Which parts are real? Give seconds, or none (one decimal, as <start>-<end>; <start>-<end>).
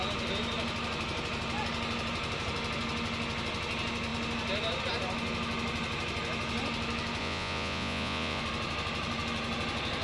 0.0-7.2; 8.4-10.0